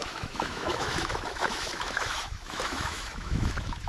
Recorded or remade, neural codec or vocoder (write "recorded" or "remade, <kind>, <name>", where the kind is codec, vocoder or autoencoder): remade, autoencoder, DAC-VAE